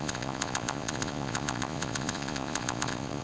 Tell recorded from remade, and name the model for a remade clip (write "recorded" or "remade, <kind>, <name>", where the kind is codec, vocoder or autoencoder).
remade, vocoder, Vocos